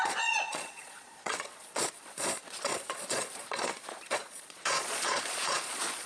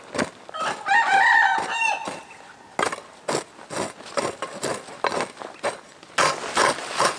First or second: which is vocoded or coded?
first